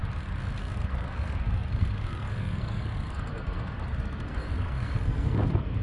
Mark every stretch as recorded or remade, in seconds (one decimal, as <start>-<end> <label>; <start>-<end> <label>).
0.0-0.6 recorded; 0.6-5.8 remade